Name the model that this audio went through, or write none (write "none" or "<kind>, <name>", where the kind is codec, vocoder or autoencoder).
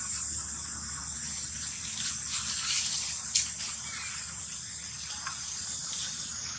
none